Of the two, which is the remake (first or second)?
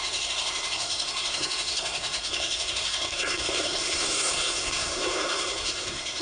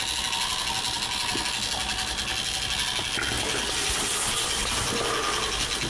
first